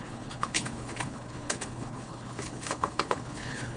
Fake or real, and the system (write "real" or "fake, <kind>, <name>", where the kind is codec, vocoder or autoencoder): fake, codec, HILCodec